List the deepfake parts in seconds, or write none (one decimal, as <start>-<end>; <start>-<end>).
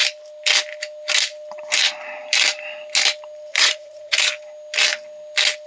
3.5-4.2